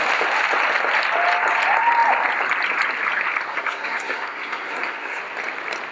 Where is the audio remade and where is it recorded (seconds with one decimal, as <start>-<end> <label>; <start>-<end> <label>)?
0.0-3.5 recorded; 3.5-5.2 remade; 5.2-5.9 recorded